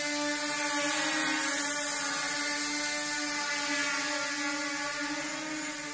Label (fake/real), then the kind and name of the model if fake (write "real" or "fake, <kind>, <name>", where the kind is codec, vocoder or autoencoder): real